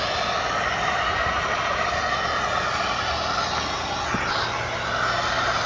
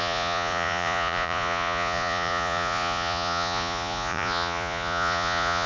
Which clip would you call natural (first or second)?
first